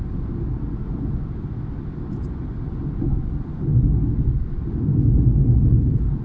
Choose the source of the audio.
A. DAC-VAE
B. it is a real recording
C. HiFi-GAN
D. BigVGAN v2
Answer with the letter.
B